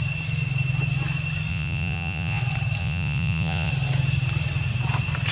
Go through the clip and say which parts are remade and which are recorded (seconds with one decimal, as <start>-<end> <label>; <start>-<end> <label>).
0.0-1.5 recorded; 1.5-2.4 remade; 2.4-2.8 recorded; 2.8-3.7 remade; 3.7-5.3 recorded

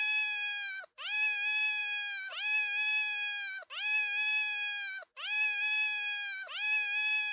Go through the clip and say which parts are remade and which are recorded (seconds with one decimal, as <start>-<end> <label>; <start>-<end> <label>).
0.0-7.3 recorded

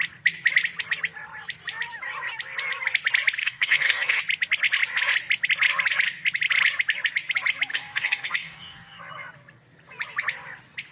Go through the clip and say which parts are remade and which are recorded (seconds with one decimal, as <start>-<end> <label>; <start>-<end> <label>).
0.0-3.4 recorded; 3.4-4.2 remade; 4.2-7.7 recorded; 7.7-9.0 remade; 9.0-10.9 recorded